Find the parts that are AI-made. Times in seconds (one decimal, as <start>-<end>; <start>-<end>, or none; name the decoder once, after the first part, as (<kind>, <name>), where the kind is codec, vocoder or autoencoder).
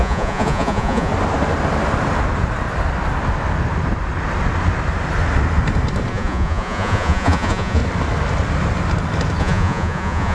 0.0-1.1 (vocoder, Vocos); 6.1-7.8; 9.4-10.3